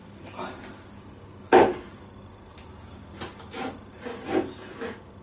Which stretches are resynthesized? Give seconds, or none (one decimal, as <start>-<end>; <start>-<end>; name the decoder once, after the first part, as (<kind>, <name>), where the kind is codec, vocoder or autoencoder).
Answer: none